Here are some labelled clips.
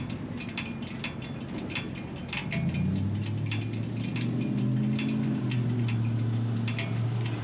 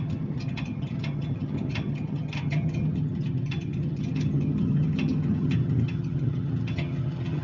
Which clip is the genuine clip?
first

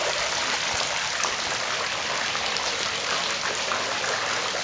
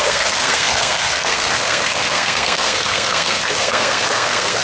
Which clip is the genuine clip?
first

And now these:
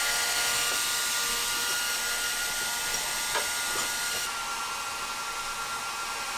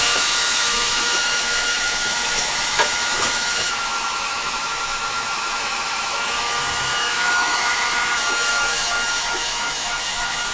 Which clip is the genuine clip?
first